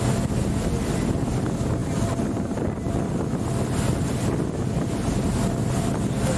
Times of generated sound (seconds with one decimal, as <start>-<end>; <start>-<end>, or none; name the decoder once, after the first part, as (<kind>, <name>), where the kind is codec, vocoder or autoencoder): none